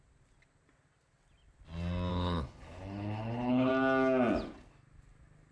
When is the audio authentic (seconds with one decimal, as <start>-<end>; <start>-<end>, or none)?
0.0-2.1; 3.7-5.5